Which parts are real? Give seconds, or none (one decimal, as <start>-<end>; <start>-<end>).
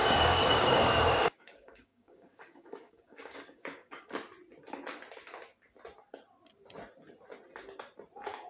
4.1-8.5